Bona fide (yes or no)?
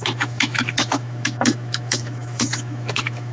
no